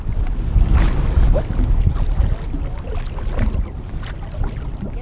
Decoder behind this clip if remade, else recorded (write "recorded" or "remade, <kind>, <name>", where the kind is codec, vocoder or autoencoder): recorded